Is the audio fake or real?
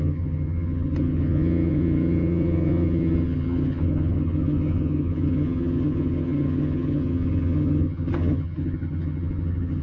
fake